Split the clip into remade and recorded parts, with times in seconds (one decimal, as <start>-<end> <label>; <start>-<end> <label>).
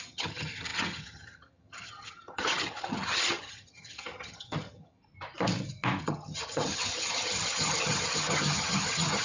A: 0.0-5.0 remade; 5.0-6.0 recorded; 6.0-9.2 remade